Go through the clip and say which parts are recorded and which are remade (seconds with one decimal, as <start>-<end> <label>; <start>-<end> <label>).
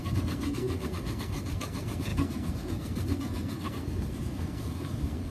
0.0-5.3 remade